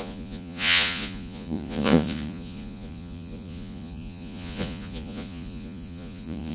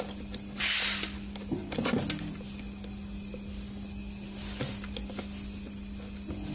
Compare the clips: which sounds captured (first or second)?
second